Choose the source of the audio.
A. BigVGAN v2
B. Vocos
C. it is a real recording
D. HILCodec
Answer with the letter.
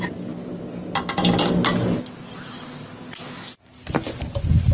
C